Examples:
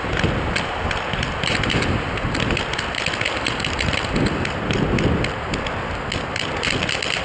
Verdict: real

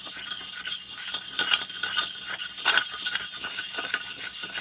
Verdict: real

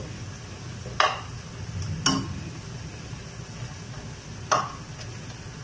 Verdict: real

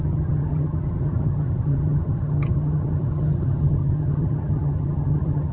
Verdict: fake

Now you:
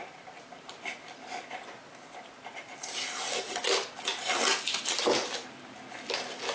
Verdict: real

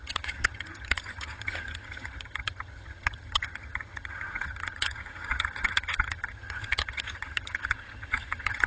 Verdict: fake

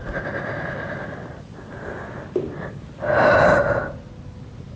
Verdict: real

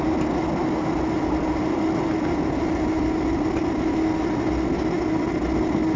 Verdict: real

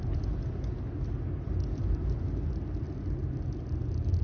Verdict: real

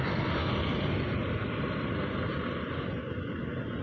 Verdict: real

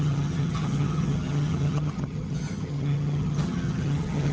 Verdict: fake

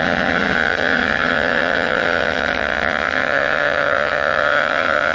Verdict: fake